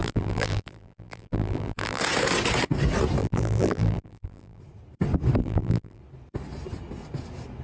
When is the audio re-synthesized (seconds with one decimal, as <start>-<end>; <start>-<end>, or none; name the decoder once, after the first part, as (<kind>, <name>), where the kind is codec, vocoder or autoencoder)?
0.0-2.0 (vocoder, BigVGAN v2); 3.2-4.6; 5.4-6.0